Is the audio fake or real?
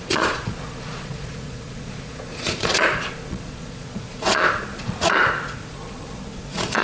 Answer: fake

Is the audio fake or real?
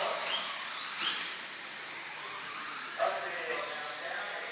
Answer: real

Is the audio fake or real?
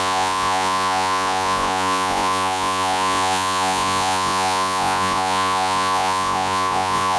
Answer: fake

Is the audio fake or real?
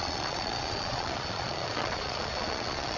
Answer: fake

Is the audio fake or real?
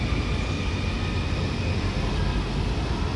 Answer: real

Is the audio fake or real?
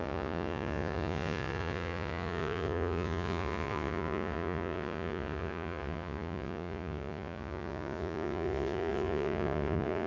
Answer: fake